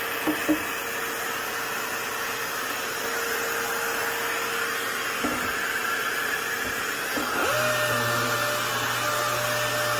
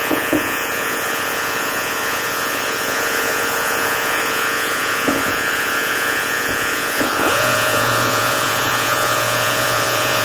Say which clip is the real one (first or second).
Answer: first